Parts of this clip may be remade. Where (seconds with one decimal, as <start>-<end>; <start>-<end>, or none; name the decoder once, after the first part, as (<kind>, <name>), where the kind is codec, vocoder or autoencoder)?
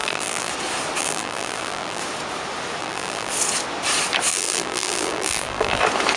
0.0-0.5 (vocoder, BigVGAN v2); 1.0-2.0; 2.8-3.3; 4.3-5.8